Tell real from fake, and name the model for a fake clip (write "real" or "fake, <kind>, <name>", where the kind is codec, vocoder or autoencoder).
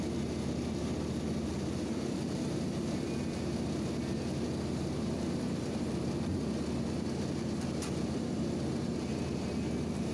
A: real